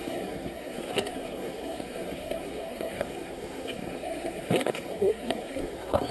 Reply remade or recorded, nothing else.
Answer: remade